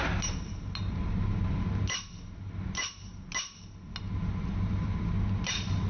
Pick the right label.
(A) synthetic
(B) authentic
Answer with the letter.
B